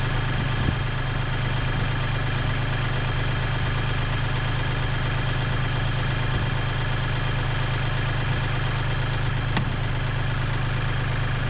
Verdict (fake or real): real